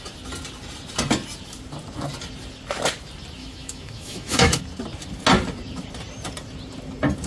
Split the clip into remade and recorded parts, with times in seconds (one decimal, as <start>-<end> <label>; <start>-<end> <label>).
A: 0.0-3.4 recorded; 3.4-4.6 remade; 4.6-7.3 recorded